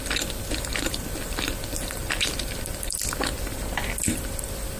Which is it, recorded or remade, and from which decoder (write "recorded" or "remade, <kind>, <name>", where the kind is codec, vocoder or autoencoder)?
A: recorded